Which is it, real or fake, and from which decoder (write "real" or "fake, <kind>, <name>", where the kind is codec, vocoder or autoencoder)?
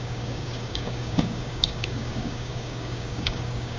fake, codec, DAC